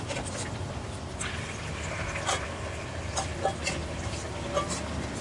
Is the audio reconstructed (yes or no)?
no